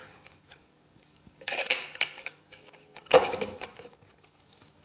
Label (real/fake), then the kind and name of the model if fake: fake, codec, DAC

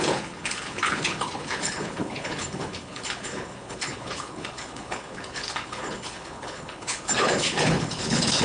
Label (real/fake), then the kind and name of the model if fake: fake, codec, HILCodec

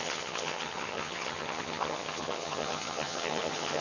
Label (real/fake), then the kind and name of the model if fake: fake, vocoder, HiFi-GAN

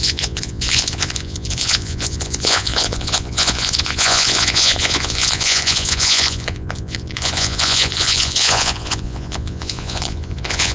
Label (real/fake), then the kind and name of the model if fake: fake, vocoder, Vocos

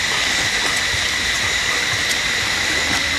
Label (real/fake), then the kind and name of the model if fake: real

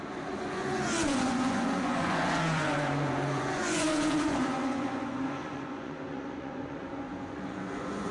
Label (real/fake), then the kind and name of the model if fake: fake, vocoder, Vocos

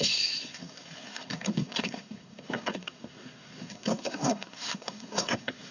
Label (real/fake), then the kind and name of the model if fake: fake, codec, SNAC